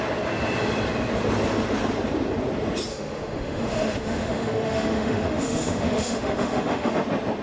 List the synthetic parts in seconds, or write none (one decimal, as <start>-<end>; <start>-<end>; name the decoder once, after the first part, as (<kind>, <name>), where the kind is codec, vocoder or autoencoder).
2.9-6.9 (autoencoder, DAC-VAE)